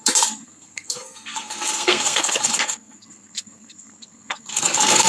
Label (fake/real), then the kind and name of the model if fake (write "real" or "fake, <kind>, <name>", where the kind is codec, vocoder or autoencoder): fake, codec, SNAC